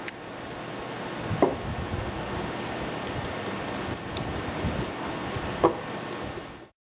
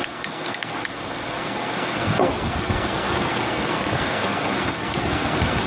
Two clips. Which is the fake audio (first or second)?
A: second